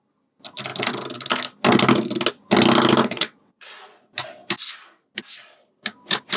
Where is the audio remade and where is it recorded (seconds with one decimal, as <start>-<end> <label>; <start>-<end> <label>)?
0.0-3.0 recorded; 3.0-3.7 remade; 3.7-6.4 recorded